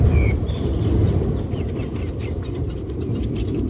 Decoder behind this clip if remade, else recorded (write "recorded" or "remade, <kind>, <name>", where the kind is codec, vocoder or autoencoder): recorded